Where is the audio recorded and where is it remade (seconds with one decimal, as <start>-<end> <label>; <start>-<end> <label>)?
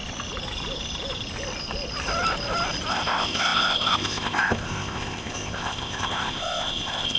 0.0-2.9 recorded; 2.9-7.2 remade